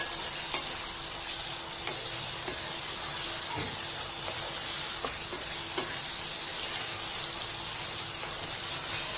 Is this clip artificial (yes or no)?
no